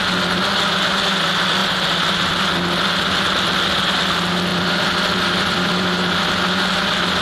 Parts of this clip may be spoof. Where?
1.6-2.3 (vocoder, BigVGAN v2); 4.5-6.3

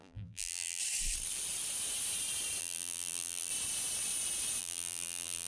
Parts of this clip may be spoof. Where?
0.0-0.8 (vocoder, BigVGAN v2); 2.6-3.5; 4.6-5.5

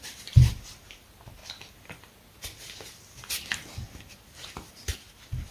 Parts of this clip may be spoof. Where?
0.0-1.4 (vocoder, BigVGAN v2); 4.7-5.5